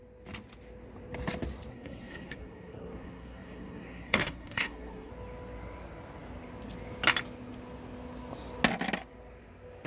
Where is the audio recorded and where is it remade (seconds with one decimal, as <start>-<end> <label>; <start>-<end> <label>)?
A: 0.0-1.7 recorded; 1.7-5.1 remade; 5.1-9.9 recorded